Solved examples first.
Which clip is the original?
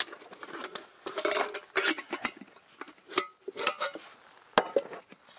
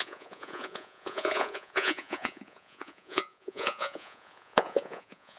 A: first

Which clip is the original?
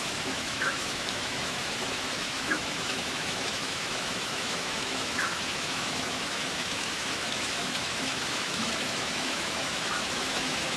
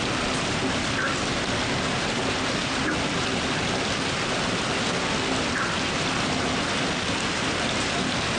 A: second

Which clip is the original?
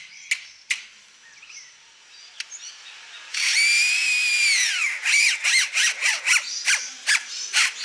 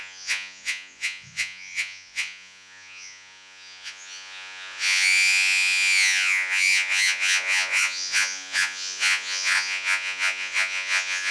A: first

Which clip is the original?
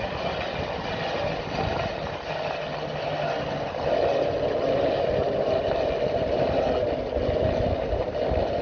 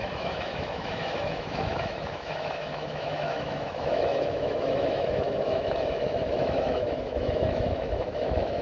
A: first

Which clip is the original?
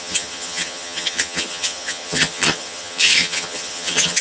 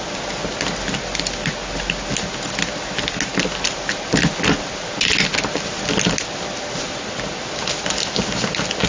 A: second